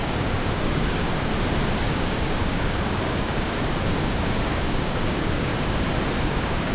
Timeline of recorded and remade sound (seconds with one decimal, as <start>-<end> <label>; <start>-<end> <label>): 0.0-1.3 remade; 1.3-1.9 recorded; 1.9-5.5 remade; 5.5-6.2 recorded; 6.2-6.7 remade

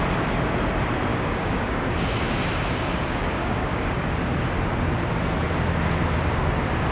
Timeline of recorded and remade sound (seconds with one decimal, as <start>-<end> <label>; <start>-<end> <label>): 0.0-1.1 recorded; 1.1-2.4 remade; 2.4-3.4 recorded; 3.4-4.1 remade; 4.1-6.9 recorded